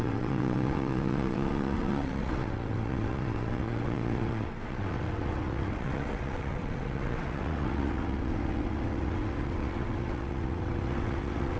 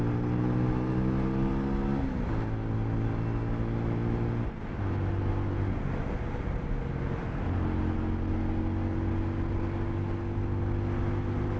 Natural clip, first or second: second